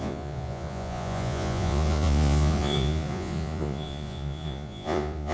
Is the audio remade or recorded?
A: remade